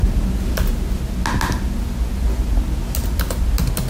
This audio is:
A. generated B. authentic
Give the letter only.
B